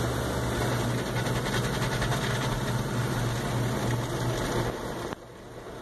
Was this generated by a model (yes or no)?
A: no